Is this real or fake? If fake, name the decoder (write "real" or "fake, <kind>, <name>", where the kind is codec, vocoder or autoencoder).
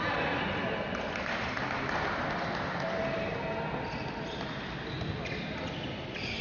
real